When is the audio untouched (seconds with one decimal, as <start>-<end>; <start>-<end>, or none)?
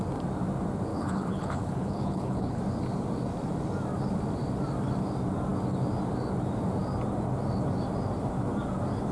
0.0-0.9; 2.6-9.1